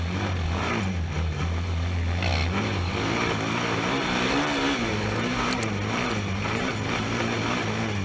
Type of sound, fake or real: real